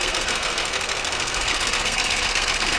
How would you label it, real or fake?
fake